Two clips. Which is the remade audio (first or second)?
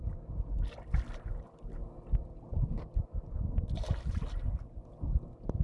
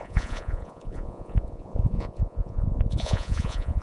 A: second